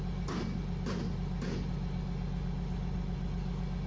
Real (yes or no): yes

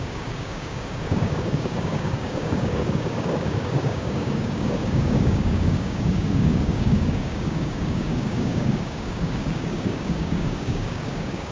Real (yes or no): no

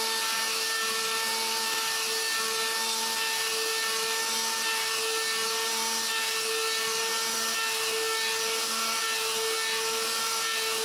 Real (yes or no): yes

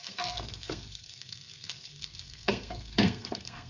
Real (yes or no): no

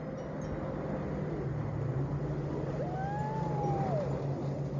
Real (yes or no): yes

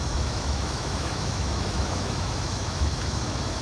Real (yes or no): no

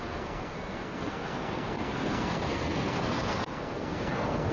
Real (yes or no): no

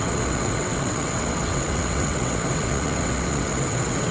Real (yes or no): no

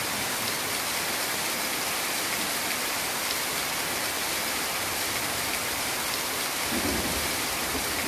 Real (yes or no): yes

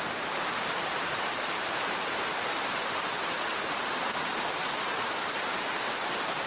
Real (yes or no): no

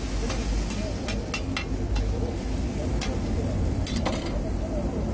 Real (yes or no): yes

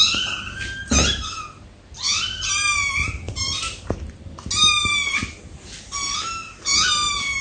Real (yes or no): yes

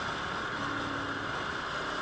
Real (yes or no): yes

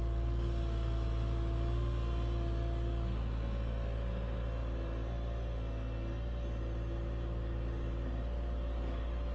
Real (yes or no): yes